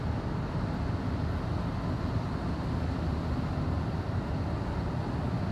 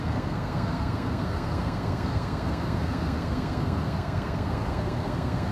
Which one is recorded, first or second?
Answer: first